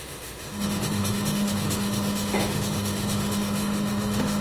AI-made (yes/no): yes